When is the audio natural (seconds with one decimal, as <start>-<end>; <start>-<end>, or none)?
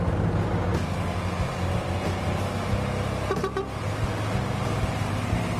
0.0-5.6